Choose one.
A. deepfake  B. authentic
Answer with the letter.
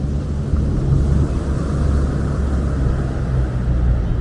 B